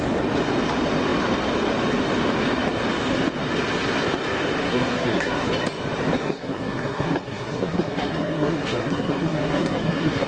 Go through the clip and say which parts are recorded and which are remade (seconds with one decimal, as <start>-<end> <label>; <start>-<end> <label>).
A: 0.0-4.6 recorded; 4.6-5.5 remade; 5.5-6.2 recorded; 6.2-10.3 remade